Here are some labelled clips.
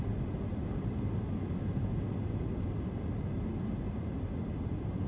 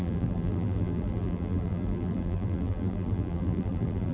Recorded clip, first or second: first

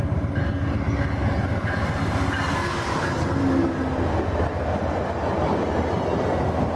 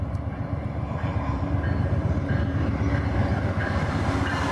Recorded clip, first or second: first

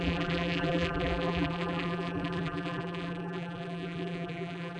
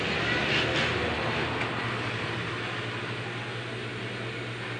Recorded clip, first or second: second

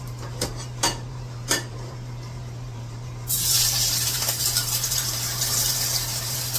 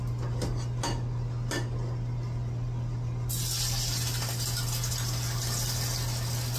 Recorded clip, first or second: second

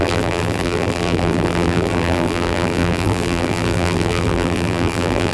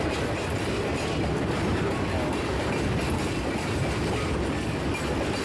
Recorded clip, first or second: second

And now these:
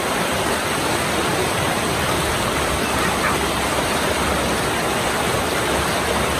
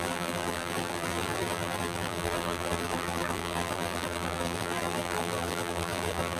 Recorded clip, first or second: first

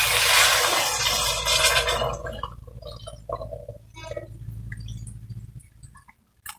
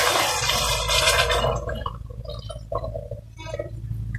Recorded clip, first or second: first